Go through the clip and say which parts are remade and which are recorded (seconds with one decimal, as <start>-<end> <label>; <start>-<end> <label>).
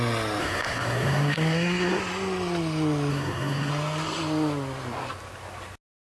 0.0-0.4 recorded; 0.4-2.0 remade; 2.0-3.1 recorded; 3.1-3.7 remade; 3.7-6.2 recorded